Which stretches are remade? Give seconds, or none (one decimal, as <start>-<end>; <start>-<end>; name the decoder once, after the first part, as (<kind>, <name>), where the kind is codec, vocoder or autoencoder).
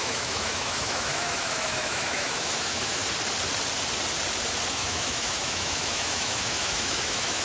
0.0-3.0 (autoencoder, DAC-VAE); 4.7-7.4